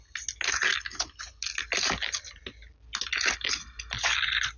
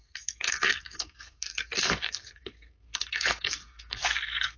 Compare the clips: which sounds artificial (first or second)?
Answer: second